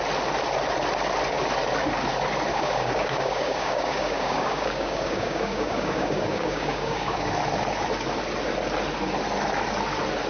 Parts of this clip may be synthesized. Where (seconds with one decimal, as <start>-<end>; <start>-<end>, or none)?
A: 2.5-7.3